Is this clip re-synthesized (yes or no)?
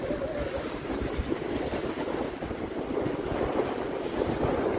no